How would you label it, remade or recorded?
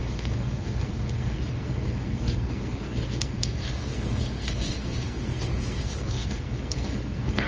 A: remade